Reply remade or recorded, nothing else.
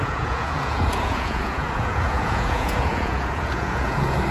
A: remade